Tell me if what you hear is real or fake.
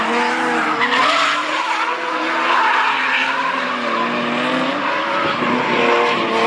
real